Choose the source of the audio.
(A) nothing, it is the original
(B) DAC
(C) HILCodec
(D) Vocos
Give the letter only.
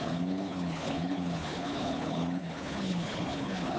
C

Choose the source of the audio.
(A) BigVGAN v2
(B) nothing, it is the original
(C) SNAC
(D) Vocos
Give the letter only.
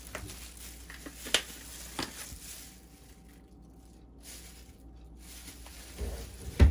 B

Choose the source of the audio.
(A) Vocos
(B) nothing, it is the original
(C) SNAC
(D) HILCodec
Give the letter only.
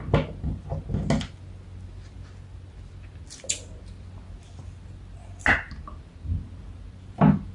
B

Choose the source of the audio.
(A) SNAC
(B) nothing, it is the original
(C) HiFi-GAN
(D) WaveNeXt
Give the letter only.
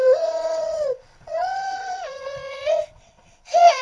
D